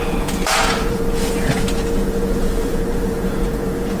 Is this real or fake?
fake